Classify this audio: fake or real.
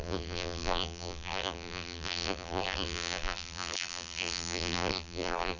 fake